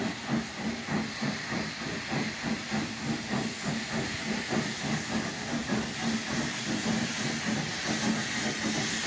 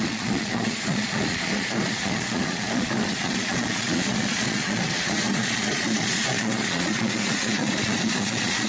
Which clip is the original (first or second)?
first